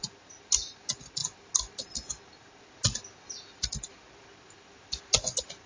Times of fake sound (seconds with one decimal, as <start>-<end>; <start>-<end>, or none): none